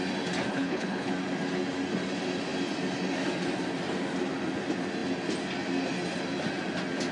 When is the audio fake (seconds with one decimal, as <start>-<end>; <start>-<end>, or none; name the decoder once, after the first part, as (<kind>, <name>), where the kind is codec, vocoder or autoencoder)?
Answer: 0.5-1.1 (codec, HILCodec)